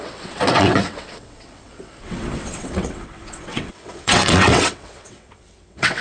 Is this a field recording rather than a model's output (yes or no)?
no